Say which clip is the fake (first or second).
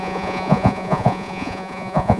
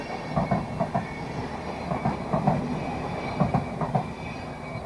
first